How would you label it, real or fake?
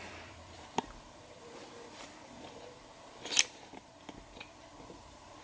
fake